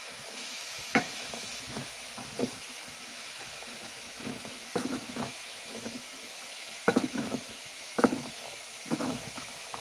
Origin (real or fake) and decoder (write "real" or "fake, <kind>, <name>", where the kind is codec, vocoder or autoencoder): fake, autoencoder, DAC-VAE